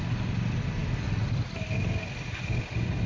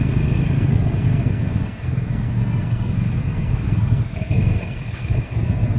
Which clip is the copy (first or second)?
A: second